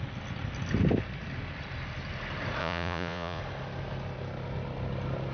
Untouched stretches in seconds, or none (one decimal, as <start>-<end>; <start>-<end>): 0.0-2.6; 3.4-5.3